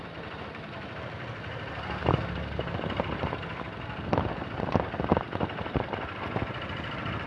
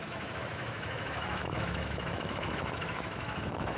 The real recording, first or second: first